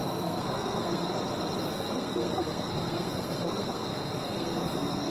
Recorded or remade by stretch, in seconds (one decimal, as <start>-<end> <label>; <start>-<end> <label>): 0.0-1.1 remade; 1.1-1.7 recorded; 1.7-5.1 remade